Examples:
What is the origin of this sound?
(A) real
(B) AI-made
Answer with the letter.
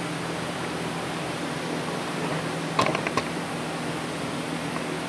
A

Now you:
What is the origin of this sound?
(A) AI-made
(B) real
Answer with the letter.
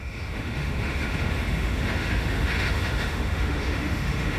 A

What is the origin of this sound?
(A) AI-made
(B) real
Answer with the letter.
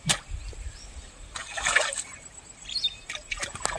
B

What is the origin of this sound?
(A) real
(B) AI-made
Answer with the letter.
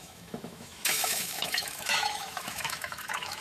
B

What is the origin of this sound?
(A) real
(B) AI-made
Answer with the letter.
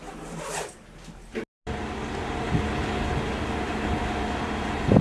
A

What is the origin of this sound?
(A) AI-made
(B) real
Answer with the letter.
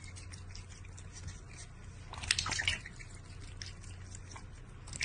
B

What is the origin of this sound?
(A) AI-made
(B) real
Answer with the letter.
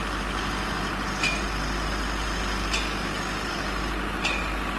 B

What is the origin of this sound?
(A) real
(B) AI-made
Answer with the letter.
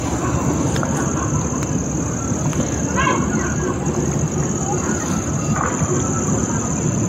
A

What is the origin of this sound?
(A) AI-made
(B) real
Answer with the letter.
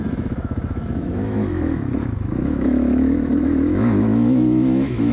A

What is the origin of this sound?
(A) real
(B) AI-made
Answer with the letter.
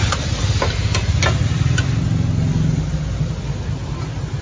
A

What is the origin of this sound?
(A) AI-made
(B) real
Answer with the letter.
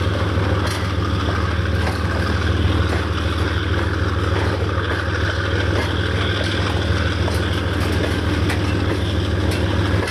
B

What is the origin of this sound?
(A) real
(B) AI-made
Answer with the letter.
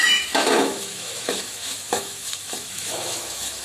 B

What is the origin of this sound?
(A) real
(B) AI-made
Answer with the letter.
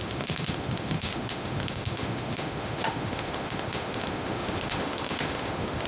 B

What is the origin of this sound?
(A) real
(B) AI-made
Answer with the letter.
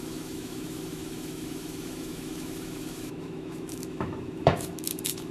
B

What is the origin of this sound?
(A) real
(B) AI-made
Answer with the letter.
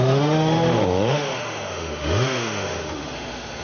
B